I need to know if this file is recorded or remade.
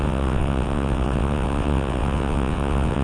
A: remade